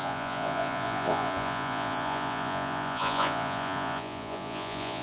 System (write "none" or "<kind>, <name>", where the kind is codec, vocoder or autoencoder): vocoder, Vocos